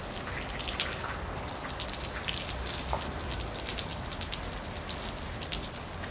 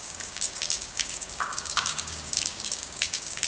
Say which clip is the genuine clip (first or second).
first